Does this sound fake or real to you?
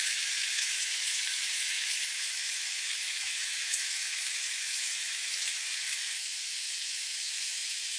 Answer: fake